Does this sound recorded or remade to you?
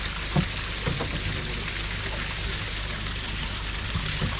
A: recorded